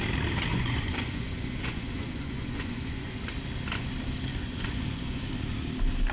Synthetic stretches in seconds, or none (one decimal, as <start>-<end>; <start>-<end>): 0.5-3.2; 4.3-5.2